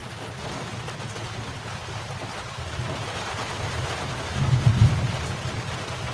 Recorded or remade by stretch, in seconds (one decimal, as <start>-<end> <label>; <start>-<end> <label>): 0.0-6.1 recorded